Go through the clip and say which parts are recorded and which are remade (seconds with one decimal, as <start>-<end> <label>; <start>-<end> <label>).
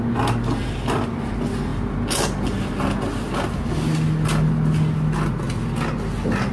0.0-6.5 recorded